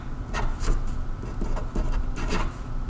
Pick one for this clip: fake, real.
real